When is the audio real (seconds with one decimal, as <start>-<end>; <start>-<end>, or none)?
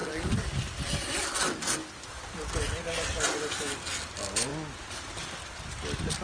0.0-6.2